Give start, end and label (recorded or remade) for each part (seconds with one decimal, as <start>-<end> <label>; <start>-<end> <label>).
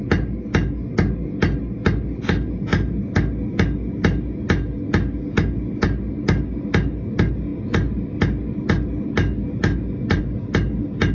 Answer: 0.0-11.1 recorded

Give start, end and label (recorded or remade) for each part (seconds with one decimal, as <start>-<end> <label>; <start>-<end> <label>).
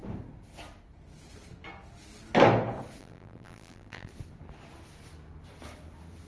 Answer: 0.0-3.0 recorded; 3.0-4.1 remade; 4.1-6.3 recorded